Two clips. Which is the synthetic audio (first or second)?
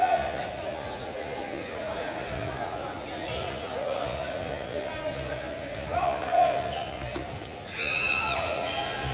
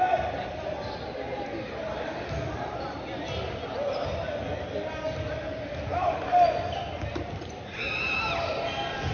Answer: first